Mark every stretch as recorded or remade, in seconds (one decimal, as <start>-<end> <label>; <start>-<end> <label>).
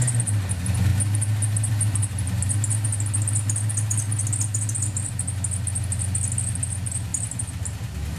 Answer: 0.0-8.2 recorded